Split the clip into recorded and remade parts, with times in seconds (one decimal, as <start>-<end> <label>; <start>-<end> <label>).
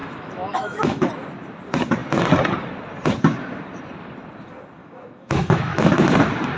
0.0-1.1 remade; 1.1-4.8 recorded; 4.8-5.9 remade; 5.9-6.6 recorded